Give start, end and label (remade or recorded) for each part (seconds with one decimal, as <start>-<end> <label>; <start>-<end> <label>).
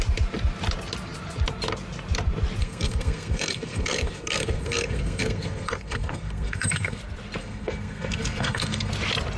0.0-2.6 recorded; 2.6-7.0 remade; 7.0-7.4 recorded; 7.4-8.9 remade; 8.9-9.4 recorded